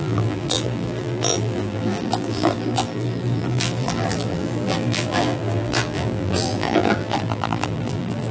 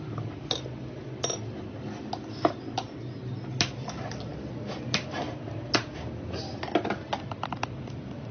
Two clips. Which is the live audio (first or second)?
second